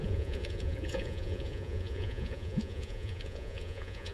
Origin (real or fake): fake